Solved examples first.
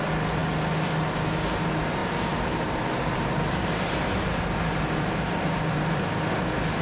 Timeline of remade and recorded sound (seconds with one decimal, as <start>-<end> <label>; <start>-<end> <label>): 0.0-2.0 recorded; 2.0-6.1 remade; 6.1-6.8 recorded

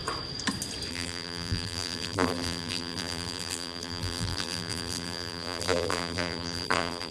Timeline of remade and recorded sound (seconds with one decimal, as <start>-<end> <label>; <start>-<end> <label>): 0.0-0.9 recorded; 0.9-7.1 remade

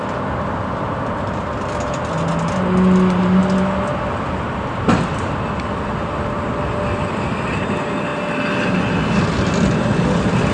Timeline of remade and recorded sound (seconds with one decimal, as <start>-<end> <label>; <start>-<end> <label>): 0.0-10.5 recorded

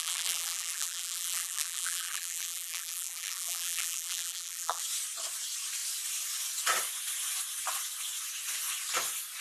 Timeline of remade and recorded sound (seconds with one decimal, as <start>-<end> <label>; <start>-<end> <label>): 0.0-4.8 remade; 4.8-9.4 recorded